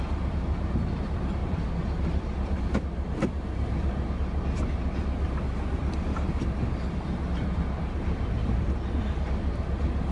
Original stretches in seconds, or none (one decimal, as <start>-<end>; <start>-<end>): 0.0-1.4; 2.6-10.1